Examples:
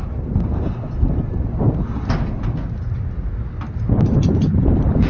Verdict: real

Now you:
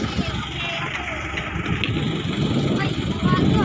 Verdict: real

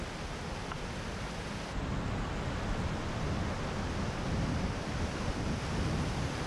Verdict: real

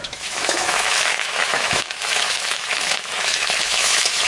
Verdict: fake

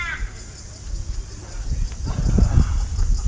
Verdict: real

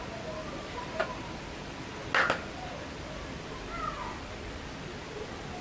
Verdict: real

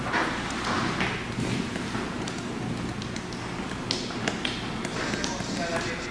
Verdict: real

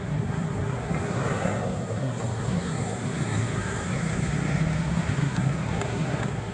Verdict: fake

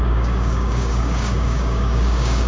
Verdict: fake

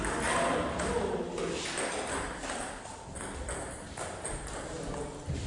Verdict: real